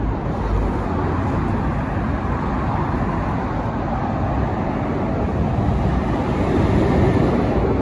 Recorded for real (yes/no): yes